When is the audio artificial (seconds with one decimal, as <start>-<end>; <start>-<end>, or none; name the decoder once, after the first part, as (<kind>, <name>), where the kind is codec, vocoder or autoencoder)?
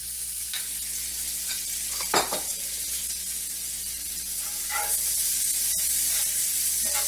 0.0-0.6 (codec, SNAC)